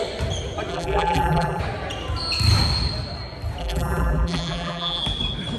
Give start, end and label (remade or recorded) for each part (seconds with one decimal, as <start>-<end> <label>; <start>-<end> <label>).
0.0-0.7 recorded; 0.7-1.6 remade; 1.6-3.6 recorded; 3.6-5.0 remade; 5.0-5.6 recorded